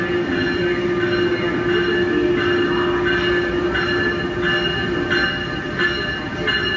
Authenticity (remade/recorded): recorded